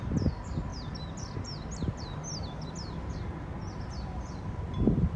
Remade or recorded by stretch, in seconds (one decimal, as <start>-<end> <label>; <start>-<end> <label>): 0.0-5.2 recorded

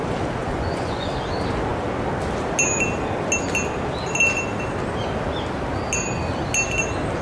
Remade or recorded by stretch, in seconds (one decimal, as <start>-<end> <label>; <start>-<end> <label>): 0.0-0.4 recorded; 0.4-1.1 remade; 1.1-7.2 recorded

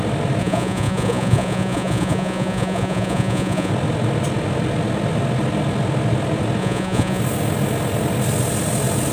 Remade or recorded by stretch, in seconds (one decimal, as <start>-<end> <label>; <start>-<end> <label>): 0.0-0.4 recorded; 0.4-3.7 remade; 3.7-6.6 recorded; 6.6-7.2 remade; 7.2-9.1 recorded

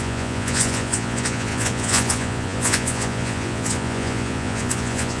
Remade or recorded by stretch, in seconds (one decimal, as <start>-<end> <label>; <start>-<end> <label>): 0.0-5.2 remade

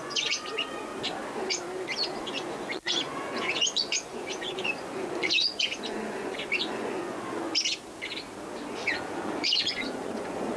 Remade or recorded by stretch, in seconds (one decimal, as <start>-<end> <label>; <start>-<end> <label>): 0.0-0.9 remade; 0.9-2.2 recorded; 2.2-7.5 remade; 7.5-8.7 recorded; 8.7-10.6 remade

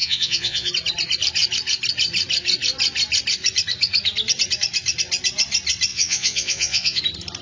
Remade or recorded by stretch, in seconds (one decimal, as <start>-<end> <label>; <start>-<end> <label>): 0.0-0.7 remade; 0.7-5.9 recorded; 5.9-7.0 remade; 7.0-7.4 recorded